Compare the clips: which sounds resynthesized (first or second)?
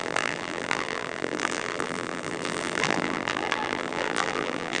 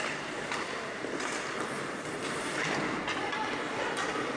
first